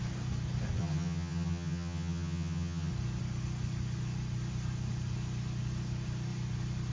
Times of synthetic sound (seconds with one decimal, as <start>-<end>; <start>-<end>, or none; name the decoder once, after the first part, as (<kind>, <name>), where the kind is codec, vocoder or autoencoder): 0.8-2.9 (vocoder, HiFi-GAN)